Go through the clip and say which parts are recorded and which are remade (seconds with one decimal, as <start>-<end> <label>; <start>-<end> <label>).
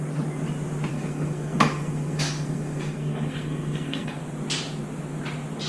0.0-0.9 recorded; 0.9-4.2 remade; 4.2-5.7 recorded